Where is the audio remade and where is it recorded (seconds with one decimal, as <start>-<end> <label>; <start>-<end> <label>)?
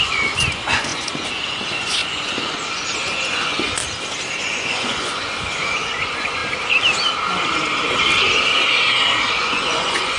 0.0-3.8 remade; 3.8-4.4 recorded; 4.4-6.4 remade; 6.4-9.4 recorded; 9.4-10.2 remade